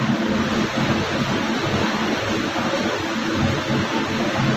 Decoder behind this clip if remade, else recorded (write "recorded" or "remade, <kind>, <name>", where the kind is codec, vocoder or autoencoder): recorded